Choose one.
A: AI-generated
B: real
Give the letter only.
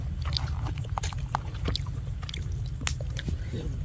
B